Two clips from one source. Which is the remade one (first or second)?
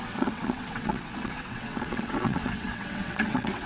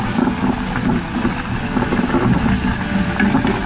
first